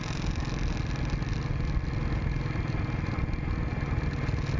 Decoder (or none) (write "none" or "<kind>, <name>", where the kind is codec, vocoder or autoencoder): none